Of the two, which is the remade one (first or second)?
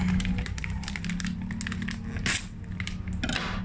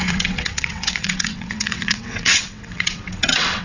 second